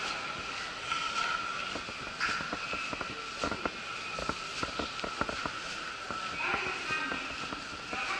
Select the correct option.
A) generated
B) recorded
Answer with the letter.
B